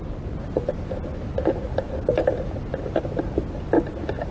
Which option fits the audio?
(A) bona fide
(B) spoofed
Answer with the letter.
A